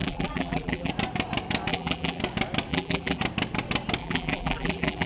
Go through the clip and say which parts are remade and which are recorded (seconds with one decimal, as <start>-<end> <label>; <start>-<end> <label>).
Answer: 0.0-0.9 remade; 0.9-1.7 recorded; 1.7-2.2 remade; 2.2-2.7 recorded; 2.7-3.2 remade; 3.2-4.0 recorded; 4.0-5.1 remade